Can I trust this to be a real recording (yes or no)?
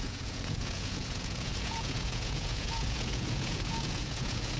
no